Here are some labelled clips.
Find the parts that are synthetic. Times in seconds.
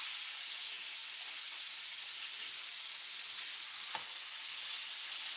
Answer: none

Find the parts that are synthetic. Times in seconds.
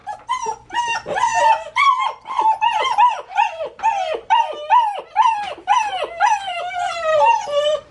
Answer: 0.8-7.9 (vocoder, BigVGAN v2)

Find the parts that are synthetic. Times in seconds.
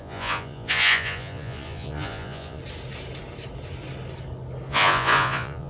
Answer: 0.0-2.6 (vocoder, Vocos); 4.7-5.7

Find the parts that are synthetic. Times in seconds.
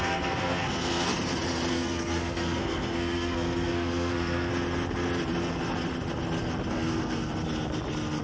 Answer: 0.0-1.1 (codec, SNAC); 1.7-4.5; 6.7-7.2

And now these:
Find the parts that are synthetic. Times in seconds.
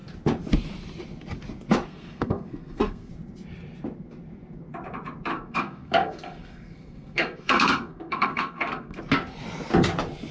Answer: 1.9-3.1 (codec, SNAC); 5.3-9.0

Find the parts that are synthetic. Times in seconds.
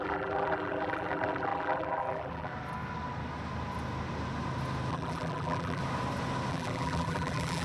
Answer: 0.0-2.5 (vocoder, BigVGAN v2); 4.9-5.8; 6.5-7.6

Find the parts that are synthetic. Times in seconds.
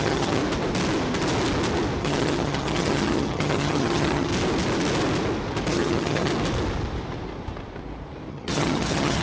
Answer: 0.0-0.4 (vocoder, HiFi-GAN); 2.0-4.3; 5.7-6.3; 8.3-9.2